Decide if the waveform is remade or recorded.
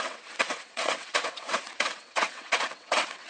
remade